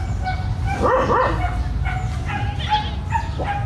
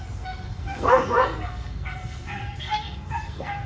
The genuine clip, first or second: first